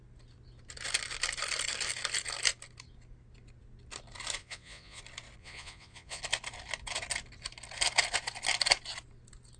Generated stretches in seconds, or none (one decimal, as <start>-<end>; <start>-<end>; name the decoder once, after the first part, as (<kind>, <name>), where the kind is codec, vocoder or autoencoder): 4.4-5.0 (vocoder, Vocos); 5.4-6.2